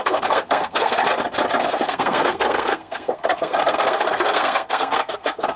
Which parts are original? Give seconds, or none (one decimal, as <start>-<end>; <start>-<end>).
1.0-1.6